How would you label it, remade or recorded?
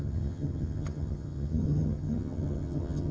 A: remade